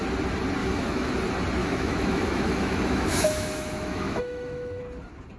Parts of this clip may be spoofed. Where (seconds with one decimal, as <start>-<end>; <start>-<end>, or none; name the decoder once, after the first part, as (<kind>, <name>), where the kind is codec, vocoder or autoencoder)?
0.6-1.1 (autoencoder, DAC-VAE); 1.6-4.8